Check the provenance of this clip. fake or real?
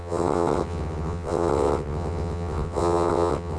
fake